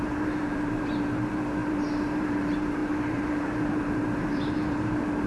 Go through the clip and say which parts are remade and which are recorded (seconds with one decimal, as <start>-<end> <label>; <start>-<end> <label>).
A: 0.0-5.3 remade